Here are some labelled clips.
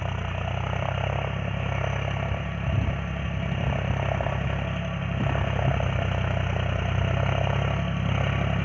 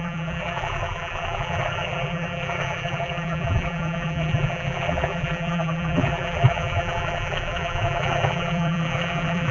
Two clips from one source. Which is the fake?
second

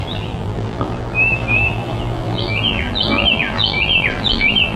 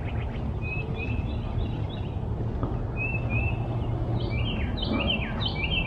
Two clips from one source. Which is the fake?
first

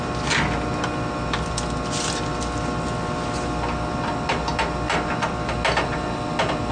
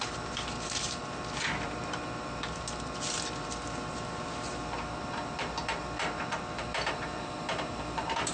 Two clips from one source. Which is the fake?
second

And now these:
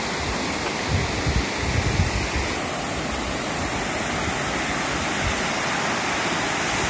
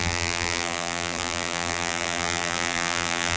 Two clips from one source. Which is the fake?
second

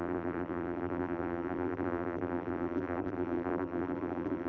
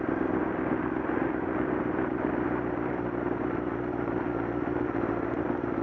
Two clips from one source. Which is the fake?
first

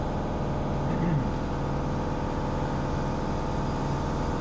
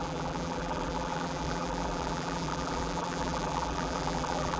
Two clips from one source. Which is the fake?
second